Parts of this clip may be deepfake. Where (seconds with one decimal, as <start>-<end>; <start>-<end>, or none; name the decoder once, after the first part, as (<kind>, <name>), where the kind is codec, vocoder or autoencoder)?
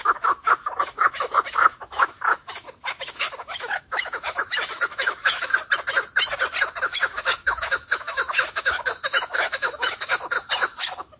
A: 0.0-5.5 (autoencoder, DAC-VAE); 6.8-11.2